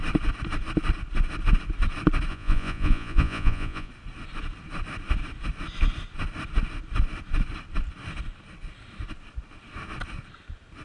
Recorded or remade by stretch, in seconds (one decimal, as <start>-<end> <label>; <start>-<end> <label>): 0.0-2.3 recorded; 2.3-3.9 remade; 3.9-10.8 recorded